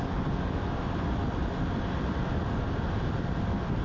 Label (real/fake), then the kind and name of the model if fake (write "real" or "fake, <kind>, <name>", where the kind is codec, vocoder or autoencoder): real